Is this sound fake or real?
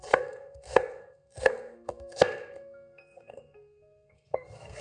fake